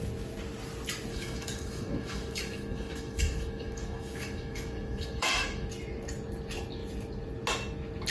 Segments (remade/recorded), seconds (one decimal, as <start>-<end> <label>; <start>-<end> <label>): 0.0-1.1 recorded; 1.1-5.7 remade; 5.7-8.1 recorded